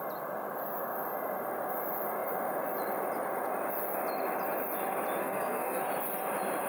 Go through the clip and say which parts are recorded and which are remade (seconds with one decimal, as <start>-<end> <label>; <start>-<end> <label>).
0.0-5.2 recorded; 5.2-5.8 remade; 5.8-6.7 recorded